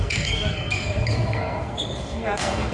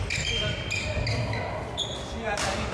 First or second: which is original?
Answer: second